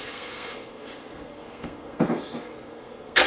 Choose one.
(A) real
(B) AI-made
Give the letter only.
B